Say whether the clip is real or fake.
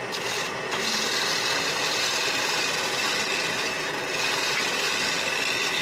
real